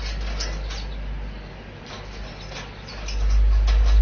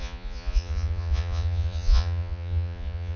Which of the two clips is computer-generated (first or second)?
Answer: second